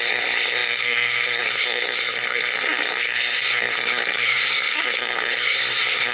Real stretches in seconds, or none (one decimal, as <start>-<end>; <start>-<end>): none